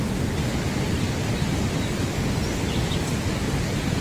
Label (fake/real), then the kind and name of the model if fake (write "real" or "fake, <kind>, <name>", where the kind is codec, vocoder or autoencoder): real